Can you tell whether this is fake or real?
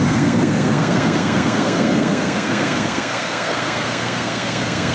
fake